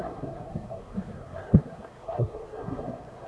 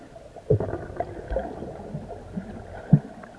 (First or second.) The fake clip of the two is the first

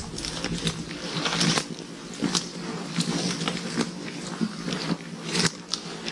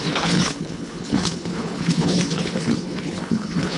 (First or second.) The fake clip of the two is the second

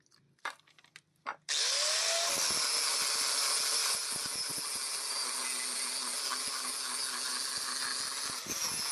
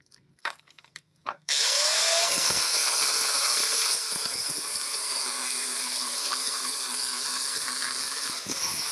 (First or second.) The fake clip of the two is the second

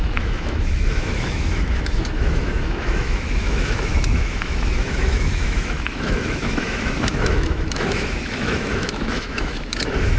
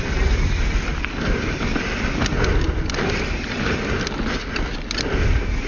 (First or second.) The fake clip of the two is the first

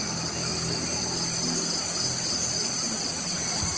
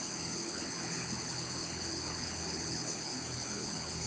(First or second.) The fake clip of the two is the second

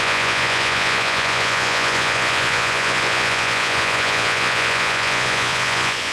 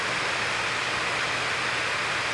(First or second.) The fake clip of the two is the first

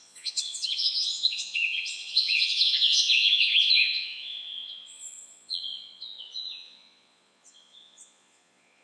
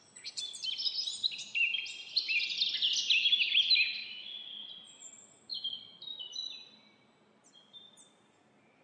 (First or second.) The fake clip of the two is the first